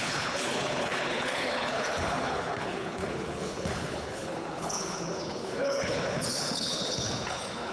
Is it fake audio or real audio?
fake